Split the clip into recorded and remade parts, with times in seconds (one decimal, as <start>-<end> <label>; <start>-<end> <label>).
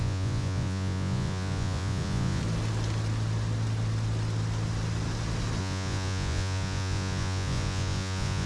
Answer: 0.0-2.4 remade; 2.4-5.6 recorded; 5.6-8.5 remade